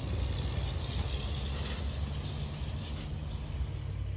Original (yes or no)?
yes